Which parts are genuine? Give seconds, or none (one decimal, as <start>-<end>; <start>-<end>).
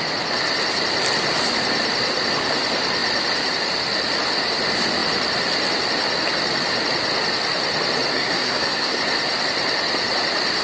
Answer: 0.0-8.1; 9.0-10.6